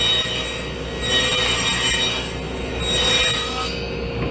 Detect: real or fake real